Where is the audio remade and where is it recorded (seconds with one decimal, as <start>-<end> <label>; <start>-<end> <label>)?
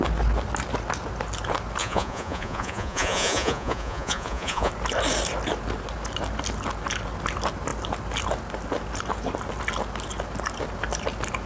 0.0-1.8 recorded; 1.8-4.7 remade; 4.7-11.5 recorded